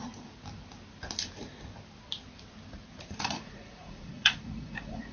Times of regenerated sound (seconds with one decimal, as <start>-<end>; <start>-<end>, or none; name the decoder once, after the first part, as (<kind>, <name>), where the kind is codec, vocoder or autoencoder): 3.1-5.1 (vocoder, Vocos)

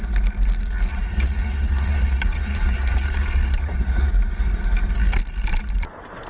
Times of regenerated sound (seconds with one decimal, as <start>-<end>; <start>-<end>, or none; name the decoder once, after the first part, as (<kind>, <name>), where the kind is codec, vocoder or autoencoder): 0.9-4.1 (vocoder, Vocos)

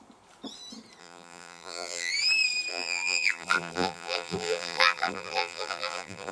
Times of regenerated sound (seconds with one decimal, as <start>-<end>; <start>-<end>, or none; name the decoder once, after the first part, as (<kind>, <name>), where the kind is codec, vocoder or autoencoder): 1.0-2.1 (vocoder, BigVGAN v2); 2.7-6.3

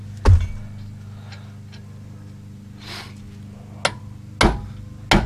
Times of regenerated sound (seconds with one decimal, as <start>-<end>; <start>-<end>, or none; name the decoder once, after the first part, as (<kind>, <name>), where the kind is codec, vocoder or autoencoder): none

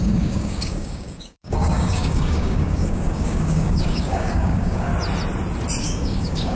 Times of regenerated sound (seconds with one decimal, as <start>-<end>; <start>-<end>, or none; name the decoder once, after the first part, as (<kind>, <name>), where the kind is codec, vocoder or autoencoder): 0.0-4.9 (codec, DAC); 5.8-6.6

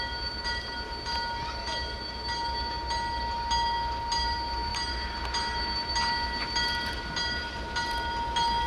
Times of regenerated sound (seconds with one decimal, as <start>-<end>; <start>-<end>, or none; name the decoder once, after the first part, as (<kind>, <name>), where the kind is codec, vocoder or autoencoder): none

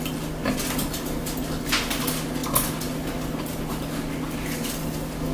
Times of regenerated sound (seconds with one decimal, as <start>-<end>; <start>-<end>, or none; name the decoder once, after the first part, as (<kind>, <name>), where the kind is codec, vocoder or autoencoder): none

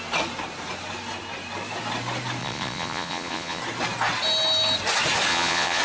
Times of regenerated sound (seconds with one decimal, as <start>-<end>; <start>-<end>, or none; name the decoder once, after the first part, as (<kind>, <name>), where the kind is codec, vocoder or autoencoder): 2.4-3.6 (vocoder, Vocos); 5.3-5.8